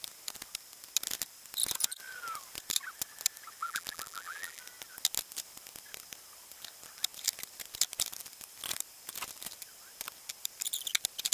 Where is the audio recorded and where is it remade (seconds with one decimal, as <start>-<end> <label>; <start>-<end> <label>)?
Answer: 0.0-3.6 recorded; 3.6-4.6 remade; 4.6-11.3 recorded